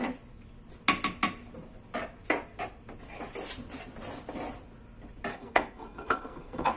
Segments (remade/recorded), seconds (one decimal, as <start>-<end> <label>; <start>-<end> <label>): 0.0-5.3 recorded; 5.3-6.8 remade